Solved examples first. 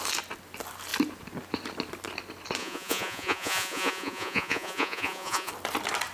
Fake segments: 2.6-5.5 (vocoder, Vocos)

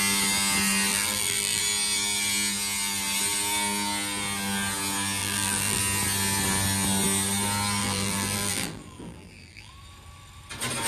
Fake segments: 0.9-1.6 (vocoder, BigVGAN v2); 5.2-5.8; 7.8-9.7

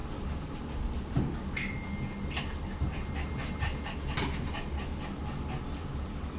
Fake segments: none

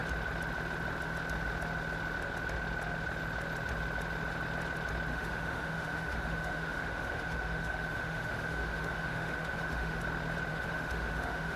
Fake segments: 5.1-10.0 (autoencoder, DAC-VAE); 10.5-11.6

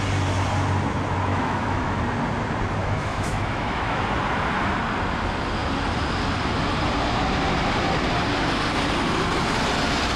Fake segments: 1.3-2.0 (autoencoder, DAC-VAE); 2.8-4.0

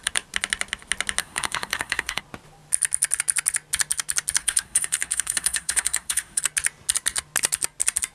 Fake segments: 1.2-2.2 (codec, SNAC); 4.4-6.4

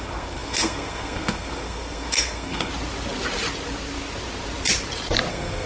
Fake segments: 0.0-2.7 (codec, SNAC); 5.3-5.7

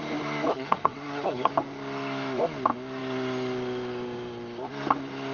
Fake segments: 0.5-1.5 (codec, SNAC)